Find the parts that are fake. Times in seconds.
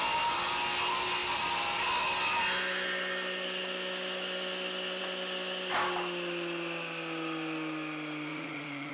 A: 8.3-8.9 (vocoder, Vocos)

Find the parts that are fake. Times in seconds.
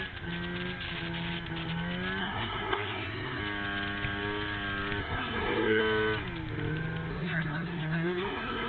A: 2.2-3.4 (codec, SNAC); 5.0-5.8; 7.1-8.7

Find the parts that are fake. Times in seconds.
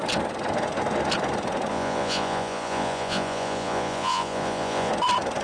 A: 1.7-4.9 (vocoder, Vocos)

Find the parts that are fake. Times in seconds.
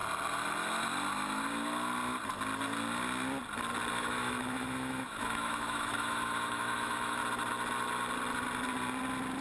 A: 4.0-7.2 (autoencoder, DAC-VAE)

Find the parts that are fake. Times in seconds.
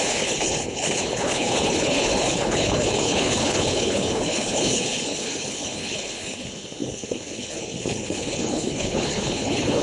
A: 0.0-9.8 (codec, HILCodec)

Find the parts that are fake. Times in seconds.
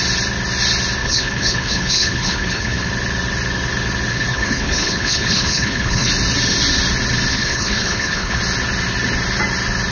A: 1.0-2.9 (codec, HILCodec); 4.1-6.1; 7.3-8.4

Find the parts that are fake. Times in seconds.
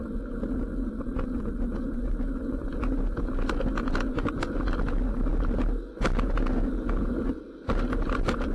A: none